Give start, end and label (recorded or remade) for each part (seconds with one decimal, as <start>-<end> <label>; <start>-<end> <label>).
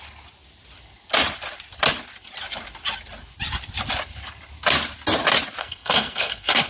0.0-5.6 recorded; 5.6-6.7 remade